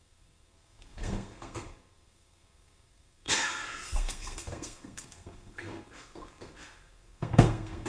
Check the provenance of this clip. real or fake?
fake